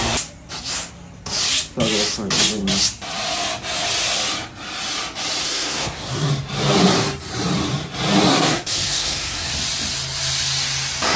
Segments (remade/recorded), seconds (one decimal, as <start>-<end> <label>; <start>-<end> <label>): 0.0-5.4 recorded; 5.4-6.3 remade; 6.3-8.3 recorded; 8.3-9.5 remade; 9.5-11.2 recorded